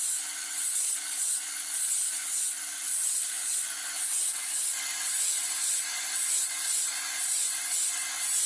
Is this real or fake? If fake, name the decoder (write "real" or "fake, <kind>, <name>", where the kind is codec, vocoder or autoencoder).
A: real